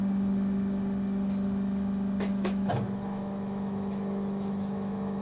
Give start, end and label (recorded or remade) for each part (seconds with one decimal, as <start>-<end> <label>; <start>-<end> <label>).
0.0-2.3 recorded; 2.3-5.2 remade